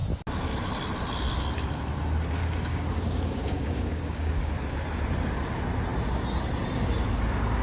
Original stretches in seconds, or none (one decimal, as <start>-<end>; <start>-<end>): 0.0-2.4; 4.5-7.6